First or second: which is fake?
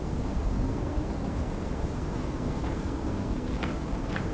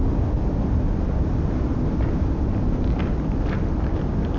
first